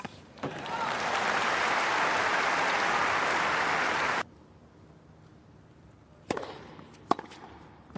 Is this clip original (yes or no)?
yes